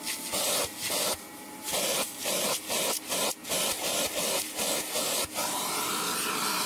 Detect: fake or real real